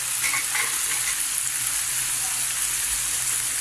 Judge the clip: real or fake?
real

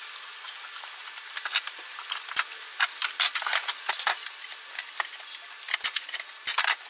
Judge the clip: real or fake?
real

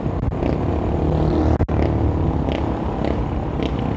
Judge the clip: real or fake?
real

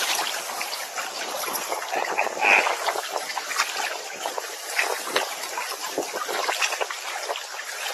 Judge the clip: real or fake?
fake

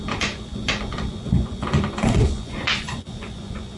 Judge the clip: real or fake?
fake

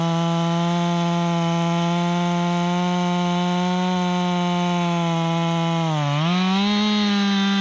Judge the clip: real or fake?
real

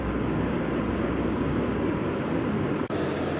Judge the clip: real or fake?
fake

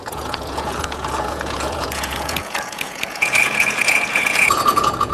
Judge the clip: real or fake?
fake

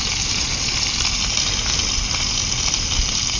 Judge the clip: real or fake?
real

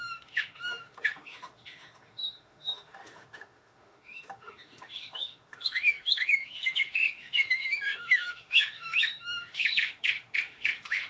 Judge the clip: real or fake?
fake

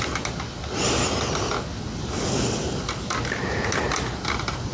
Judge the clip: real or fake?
real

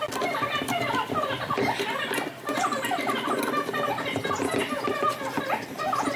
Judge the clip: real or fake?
real